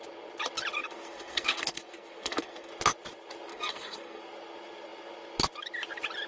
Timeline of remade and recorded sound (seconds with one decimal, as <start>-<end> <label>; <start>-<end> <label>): 0.0-0.8 recorded; 0.8-2.7 remade; 2.7-3.5 recorded; 3.5-4.2 remade; 4.2-6.3 recorded